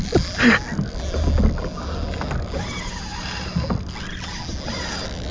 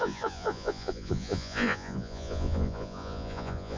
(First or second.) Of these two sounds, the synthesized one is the second